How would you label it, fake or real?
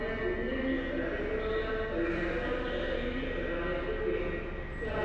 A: real